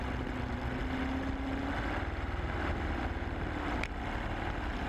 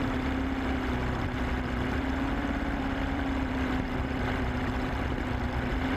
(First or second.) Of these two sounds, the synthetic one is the second